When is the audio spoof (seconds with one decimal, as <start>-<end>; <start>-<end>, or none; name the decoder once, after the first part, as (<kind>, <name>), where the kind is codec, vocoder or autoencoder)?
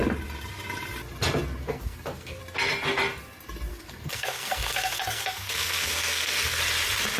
1.6-2.4 (codec, SNAC); 3.7-6.6